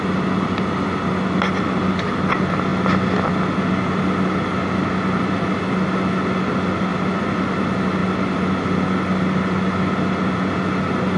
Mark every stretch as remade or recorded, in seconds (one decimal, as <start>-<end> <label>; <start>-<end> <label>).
0.0-11.2 recorded